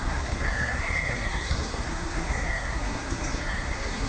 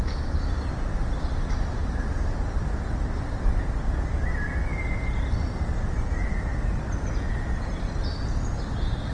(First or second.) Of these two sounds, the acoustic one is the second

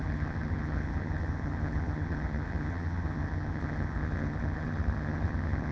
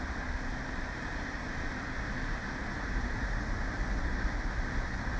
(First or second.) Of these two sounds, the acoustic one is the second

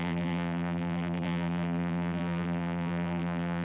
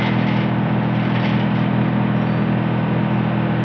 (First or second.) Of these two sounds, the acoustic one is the second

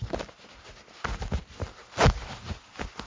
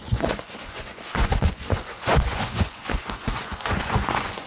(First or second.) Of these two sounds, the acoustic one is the first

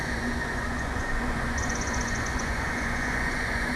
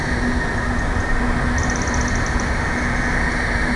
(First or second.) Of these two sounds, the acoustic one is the second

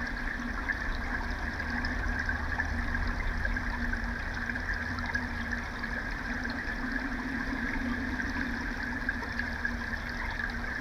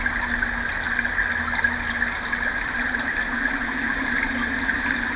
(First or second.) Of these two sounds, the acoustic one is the second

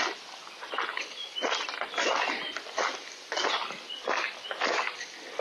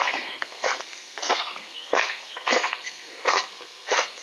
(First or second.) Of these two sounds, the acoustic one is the first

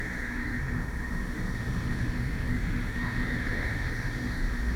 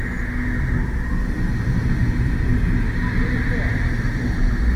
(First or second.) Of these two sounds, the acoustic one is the second